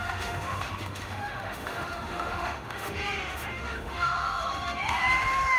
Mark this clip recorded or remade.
remade